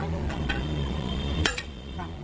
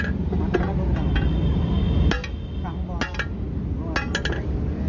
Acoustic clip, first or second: second